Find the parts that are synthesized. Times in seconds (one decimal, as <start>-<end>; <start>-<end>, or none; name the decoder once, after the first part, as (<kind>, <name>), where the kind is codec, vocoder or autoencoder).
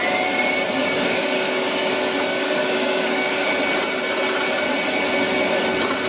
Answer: 0.8-1.9 (codec, DAC); 2.3-3.5